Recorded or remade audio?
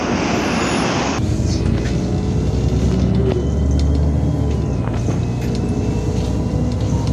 recorded